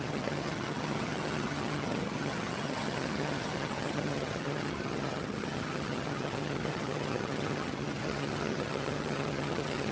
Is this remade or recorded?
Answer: remade